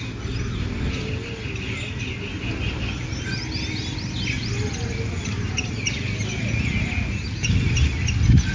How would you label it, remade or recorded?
recorded